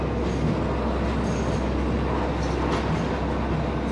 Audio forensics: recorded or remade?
recorded